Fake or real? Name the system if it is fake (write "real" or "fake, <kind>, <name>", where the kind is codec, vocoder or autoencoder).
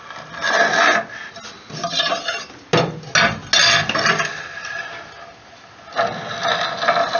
real